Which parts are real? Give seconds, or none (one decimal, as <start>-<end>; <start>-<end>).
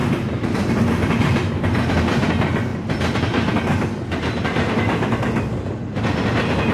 1.6-6.7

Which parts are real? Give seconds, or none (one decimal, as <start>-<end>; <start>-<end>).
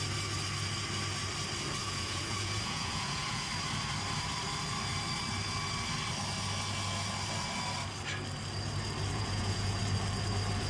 0.0-1.8; 3.5-9.1; 9.8-10.7